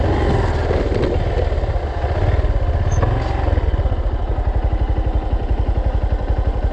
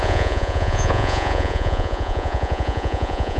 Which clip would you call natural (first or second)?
first